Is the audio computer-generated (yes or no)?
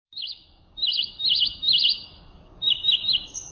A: yes